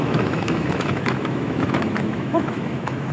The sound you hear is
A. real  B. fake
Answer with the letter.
B